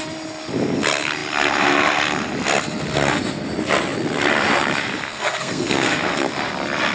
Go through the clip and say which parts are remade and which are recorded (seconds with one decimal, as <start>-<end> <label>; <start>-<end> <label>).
0.0-5.1 recorded; 5.1-6.0 remade; 6.0-6.9 recorded